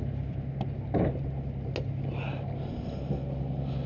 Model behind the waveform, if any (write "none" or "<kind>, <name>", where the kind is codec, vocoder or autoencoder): none